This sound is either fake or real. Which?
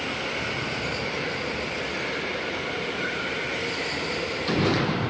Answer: real